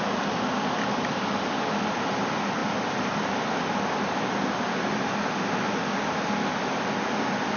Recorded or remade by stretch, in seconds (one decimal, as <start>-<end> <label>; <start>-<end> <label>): 0.0-7.6 recorded